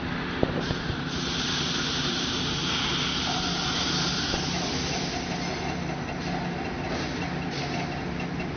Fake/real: real